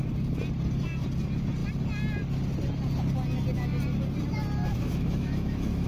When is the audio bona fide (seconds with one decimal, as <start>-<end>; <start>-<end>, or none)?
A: 0.0-4.6

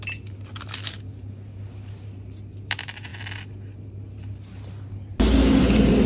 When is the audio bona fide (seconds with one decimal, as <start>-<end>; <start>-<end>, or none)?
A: 0.0-6.1

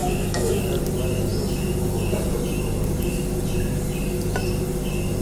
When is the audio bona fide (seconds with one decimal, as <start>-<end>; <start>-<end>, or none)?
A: 0.6-5.2

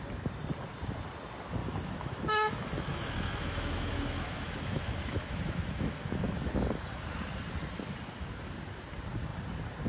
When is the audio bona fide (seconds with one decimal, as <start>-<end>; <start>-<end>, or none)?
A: 0.0-1.6; 6.5-9.9

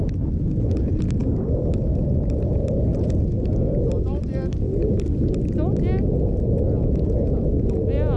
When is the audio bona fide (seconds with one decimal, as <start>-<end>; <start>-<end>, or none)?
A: 0.0-1.2; 1.8-8.2

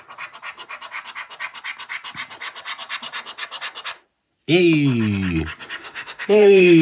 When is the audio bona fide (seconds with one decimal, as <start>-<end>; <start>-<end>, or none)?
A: 0.0-5.8

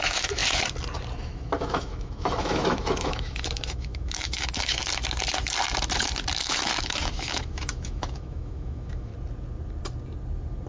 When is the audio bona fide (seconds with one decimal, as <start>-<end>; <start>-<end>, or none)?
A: 0.4-1.2; 4.8-6.4; 9.1-10.7

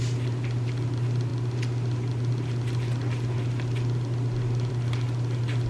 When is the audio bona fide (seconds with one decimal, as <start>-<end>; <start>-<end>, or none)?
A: 0.0-5.7